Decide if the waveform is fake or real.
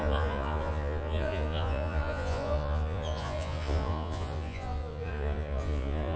fake